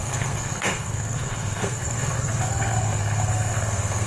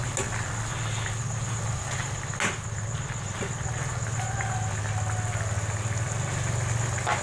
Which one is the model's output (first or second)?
first